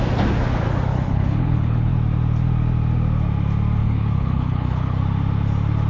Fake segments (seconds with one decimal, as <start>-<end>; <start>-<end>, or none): 0.9-1.9; 3.8-5.0